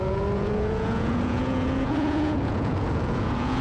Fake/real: fake